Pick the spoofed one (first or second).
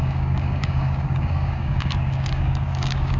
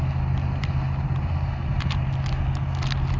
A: first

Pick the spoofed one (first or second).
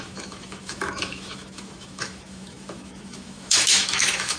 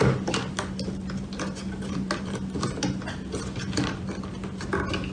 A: first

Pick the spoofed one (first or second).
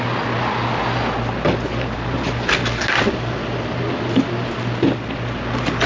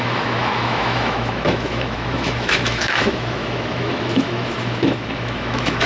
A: second